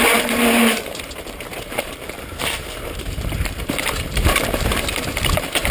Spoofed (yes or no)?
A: yes